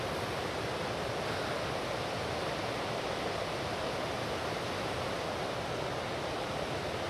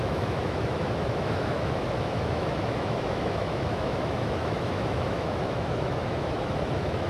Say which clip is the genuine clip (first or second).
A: first